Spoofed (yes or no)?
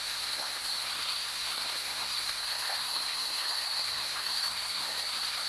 yes